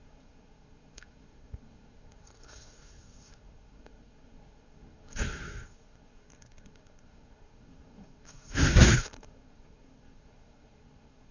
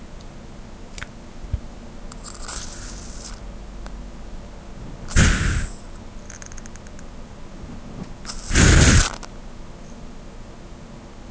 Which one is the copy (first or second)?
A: first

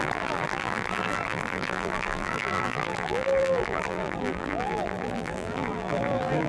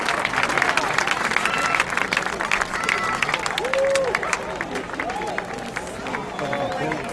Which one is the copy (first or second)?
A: first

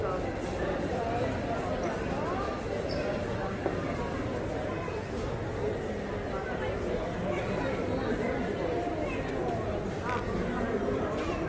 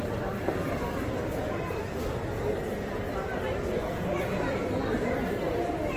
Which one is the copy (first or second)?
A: second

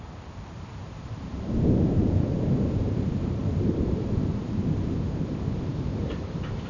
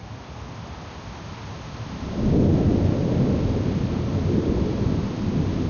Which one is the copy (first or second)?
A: first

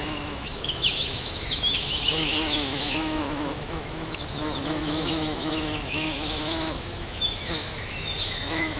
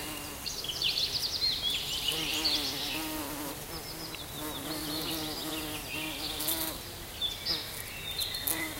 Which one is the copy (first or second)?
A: first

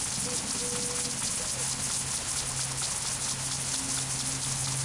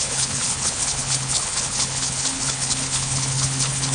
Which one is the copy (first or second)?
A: second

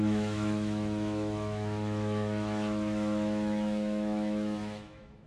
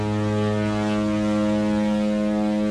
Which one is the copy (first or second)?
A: first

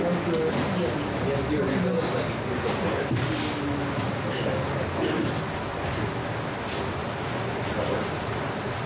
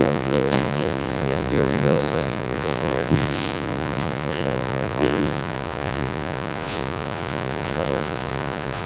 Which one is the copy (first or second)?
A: second